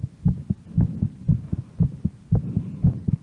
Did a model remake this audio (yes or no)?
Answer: no